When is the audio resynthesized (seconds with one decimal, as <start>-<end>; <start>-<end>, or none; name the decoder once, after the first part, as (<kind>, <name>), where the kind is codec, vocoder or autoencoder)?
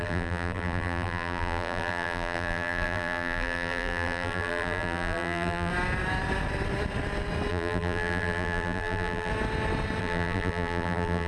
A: 0.0-5.7 (vocoder, BigVGAN v2); 7.5-9.3; 10.0-11.3